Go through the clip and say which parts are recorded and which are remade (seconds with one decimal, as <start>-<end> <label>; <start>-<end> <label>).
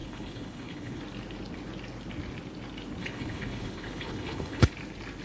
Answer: 0.0-1.0 remade; 1.0-3.0 recorded; 3.0-4.7 remade; 4.7-5.2 recorded